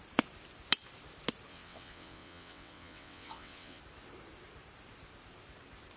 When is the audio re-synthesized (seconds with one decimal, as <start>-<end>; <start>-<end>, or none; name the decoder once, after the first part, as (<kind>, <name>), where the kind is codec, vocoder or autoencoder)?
1.5-3.8 (vocoder, WaveNeXt)